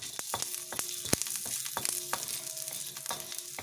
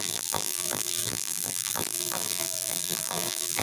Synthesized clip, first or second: second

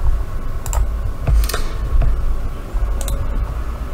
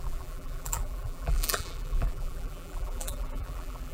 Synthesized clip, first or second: second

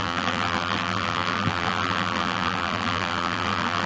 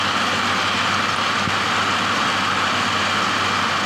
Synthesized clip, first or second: first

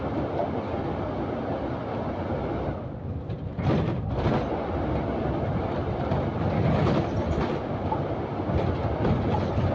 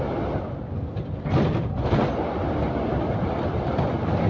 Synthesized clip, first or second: second